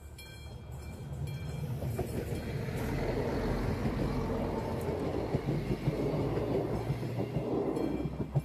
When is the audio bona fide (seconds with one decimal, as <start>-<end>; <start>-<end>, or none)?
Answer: 0.0-8.4